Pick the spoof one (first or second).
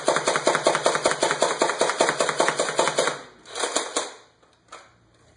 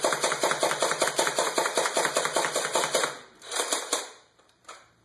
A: second